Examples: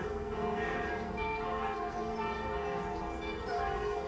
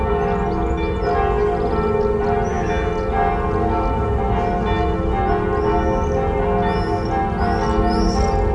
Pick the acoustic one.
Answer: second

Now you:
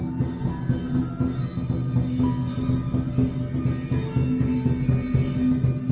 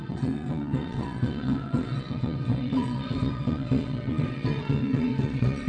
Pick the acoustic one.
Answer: first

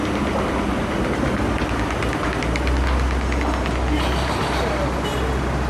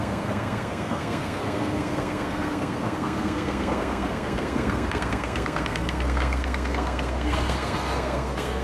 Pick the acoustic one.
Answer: first